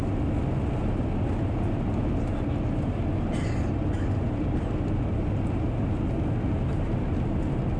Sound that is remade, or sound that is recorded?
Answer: recorded